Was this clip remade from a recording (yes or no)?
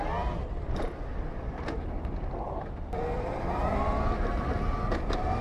no